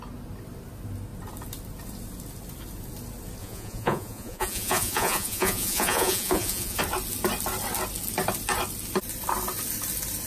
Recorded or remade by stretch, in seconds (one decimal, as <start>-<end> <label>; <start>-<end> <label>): 0.0-3.4 recorded; 3.4-6.8 remade; 6.8-10.3 recorded